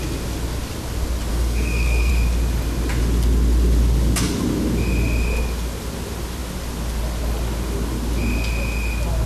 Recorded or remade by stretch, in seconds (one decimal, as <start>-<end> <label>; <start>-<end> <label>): 0.0-1.3 recorded; 1.3-2.1 remade; 2.1-9.3 recorded